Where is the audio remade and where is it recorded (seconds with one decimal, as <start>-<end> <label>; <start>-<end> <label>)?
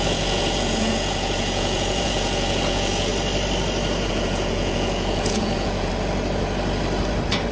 0.0-3.1 remade; 3.1-4.1 recorded; 4.1-5.9 remade; 5.9-7.5 recorded